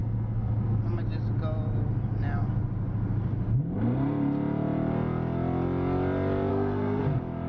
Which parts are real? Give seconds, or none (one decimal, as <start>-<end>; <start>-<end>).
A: 0.8-6.5; 7.0-7.5